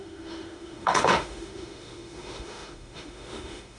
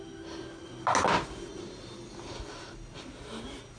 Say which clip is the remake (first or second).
first